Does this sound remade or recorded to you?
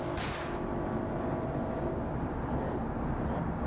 recorded